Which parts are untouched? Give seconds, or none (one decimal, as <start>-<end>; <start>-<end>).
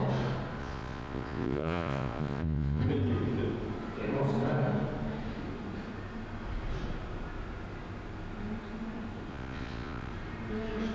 0.0-0.6; 2.8-9.3; 10.1-10.9